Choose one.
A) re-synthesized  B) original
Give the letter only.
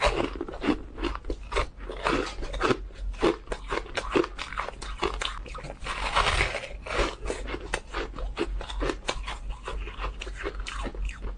B